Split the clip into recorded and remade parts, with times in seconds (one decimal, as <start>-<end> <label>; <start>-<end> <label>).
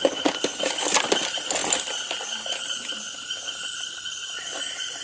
0.0-5.0 recorded